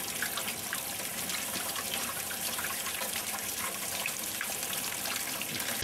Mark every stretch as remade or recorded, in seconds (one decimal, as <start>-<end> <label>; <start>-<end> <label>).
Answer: 0.0-1.1 recorded; 1.1-4.6 remade; 4.6-5.8 recorded